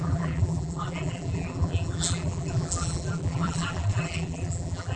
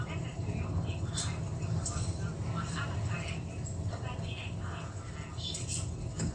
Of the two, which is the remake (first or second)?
first